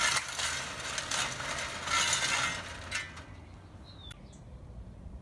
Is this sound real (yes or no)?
yes